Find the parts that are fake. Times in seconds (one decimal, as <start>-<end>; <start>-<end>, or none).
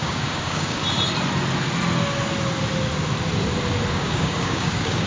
0.0-0.8; 3.9-5.1